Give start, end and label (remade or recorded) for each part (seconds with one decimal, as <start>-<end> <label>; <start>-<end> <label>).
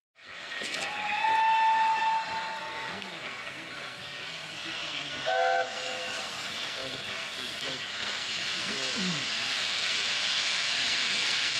0.0-1.2 remade; 1.2-2.6 recorded; 2.6-11.6 remade